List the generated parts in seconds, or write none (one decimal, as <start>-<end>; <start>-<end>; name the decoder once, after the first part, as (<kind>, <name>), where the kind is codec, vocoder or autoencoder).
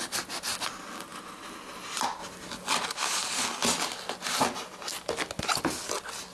none